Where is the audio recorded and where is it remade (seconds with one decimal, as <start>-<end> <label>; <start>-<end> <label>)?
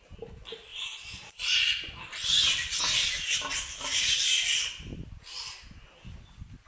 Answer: 0.0-0.7 recorded; 0.7-2.8 remade; 2.8-6.7 recorded